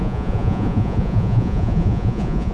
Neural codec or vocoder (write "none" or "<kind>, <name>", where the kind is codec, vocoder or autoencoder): vocoder, Vocos